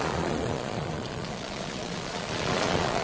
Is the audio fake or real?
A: fake